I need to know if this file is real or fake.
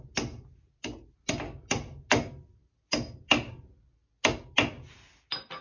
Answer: real